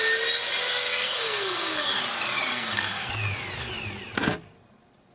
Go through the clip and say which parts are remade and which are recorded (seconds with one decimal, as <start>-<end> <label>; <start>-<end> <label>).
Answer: 0.0-0.6 recorded; 0.6-2.0 remade; 2.0-2.5 recorded; 2.5-3.1 remade; 3.1-5.1 recorded